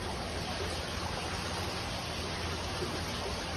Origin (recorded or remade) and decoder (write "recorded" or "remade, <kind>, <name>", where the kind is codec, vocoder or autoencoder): recorded